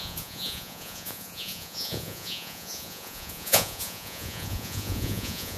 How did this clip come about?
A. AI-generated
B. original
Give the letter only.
A